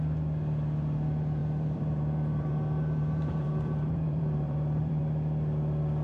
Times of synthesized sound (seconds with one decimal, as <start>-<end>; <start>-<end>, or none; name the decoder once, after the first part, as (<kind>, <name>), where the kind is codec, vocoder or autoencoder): 1.4-5.0 (vocoder, BigVGAN v2)